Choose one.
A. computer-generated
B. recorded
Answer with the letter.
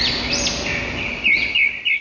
A